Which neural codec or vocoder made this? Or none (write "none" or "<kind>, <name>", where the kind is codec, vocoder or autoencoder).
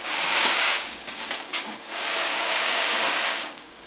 codec, DAC